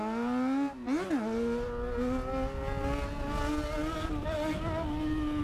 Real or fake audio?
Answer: real